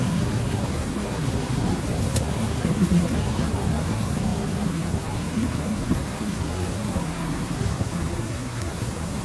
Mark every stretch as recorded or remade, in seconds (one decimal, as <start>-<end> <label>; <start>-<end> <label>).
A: 0.0-9.2 remade